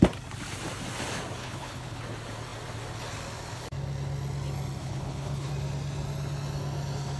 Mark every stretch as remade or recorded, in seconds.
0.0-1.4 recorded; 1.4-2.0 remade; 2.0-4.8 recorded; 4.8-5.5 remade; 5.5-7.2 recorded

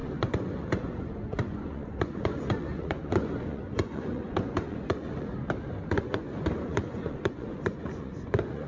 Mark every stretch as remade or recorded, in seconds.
0.0-5.3 remade; 5.3-5.9 recorded; 5.9-8.7 remade